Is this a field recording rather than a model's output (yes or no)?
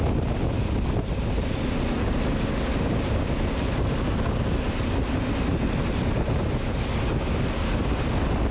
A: yes